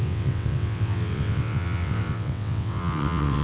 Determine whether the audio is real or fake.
fake